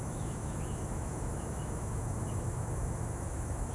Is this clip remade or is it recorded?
remade